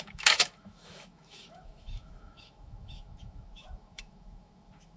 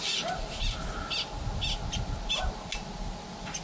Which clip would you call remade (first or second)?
first